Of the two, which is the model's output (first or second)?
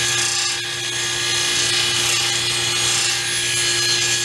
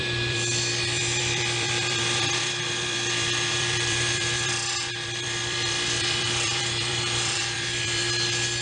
second